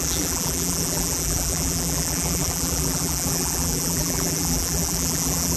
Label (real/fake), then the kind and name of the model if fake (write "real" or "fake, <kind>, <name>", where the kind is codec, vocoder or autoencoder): fake, vocoder, BigVGAN v2